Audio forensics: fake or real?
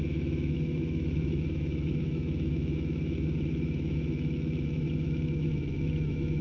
fake